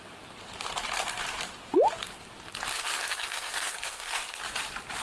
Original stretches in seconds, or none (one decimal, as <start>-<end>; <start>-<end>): 0.0-2.7; 4.4-5.0